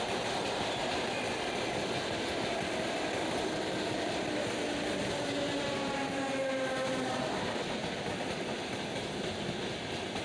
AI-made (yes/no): no